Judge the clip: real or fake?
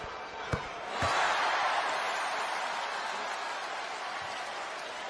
real